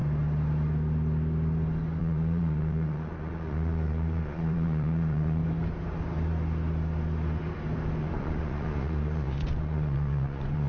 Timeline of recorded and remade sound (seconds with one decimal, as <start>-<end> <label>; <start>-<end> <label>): 0.0-2.0 recorded; 2.0-5.4 remade; 5.4-8.0 recorded; 8.0-10.7 remade